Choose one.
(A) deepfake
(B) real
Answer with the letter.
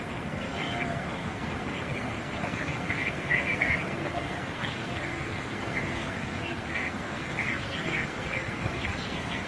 A